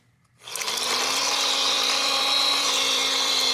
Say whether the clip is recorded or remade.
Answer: remade